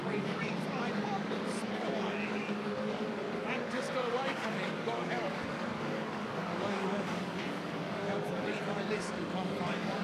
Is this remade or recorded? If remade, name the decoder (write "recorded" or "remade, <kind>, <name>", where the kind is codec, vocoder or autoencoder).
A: remade, codec, DAC